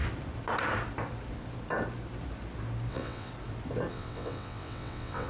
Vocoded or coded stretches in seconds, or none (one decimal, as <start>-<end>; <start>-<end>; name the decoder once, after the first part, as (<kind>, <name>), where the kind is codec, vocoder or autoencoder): 2.9-3.3 (vocoder, WaveNeXt); 3.9-5.3